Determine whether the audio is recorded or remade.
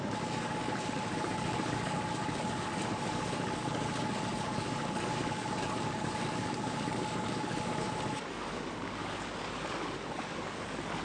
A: remade